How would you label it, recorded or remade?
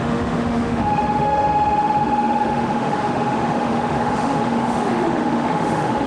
remade